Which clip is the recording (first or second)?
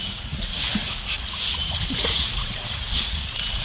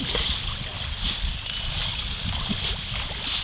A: second